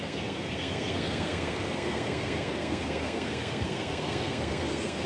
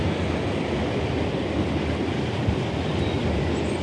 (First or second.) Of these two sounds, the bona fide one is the second